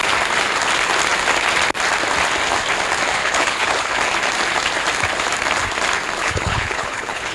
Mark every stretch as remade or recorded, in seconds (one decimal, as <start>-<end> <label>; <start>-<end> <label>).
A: 0.0-3.2 recorded; 3.2-4.0 remade; 4.0-6.2 recorded; 6.2-7.3 remade